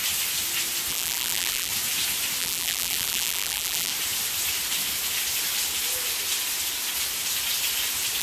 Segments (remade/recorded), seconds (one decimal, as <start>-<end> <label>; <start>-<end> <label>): 0.0-0.9 recorded; 0.9-1.7 remade; 1.7-2.4 recorded; 2.4-3.9 remade; 3.9-8.2 recorded